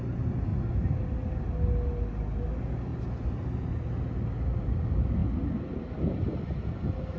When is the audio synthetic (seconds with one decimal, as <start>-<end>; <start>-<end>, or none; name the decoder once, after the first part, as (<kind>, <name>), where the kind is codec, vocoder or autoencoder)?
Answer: none